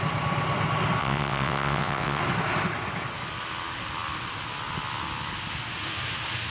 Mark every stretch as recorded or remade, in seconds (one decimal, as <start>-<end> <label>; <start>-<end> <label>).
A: 0.0-1.0 recorded; 1.0-2.2 remade; 2.2-6.5 recorded